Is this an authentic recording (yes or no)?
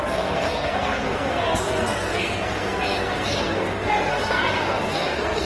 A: no